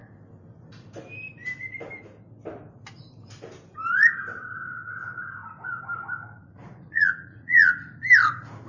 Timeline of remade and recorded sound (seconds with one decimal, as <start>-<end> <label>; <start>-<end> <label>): 0.0-6.4 recorded; 6.4-8.0 remade; 8.0-8.7 recorded